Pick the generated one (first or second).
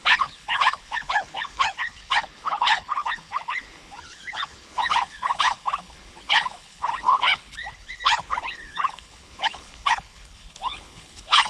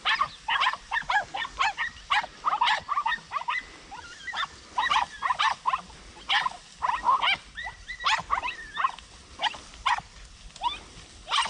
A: first